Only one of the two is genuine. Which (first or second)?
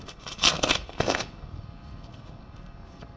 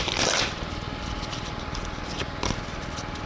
second